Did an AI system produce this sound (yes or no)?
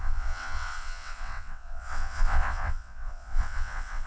yes